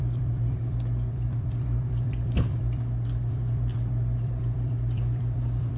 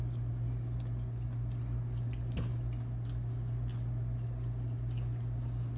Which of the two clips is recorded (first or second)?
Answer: second